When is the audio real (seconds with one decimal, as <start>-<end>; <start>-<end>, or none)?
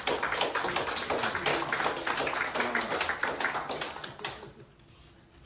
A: 0.0-5.5